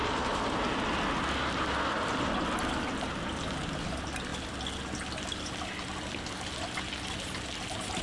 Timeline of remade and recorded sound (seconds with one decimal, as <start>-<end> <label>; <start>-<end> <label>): 0.0-8.0 recorded